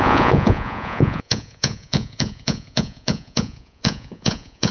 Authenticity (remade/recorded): remade